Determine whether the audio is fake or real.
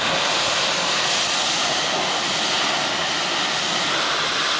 fake